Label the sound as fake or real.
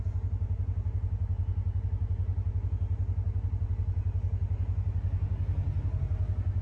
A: real